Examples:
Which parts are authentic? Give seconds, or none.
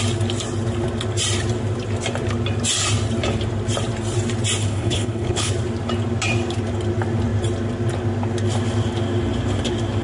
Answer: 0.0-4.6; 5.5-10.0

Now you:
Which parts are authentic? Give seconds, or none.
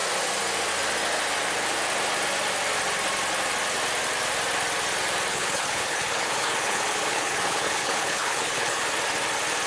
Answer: 0.0-5.3; 8.8-9.7